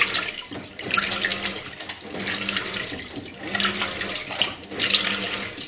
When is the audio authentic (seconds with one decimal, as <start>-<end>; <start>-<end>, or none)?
0.0-5.7